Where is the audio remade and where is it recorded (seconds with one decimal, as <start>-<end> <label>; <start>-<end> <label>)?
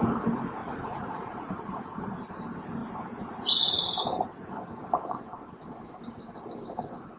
0.0-0.6 recorded; 0.6-2.2 remade; 2.2-7.2 recorded